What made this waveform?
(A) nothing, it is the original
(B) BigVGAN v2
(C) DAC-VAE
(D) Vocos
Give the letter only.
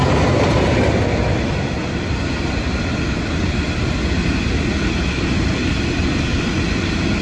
A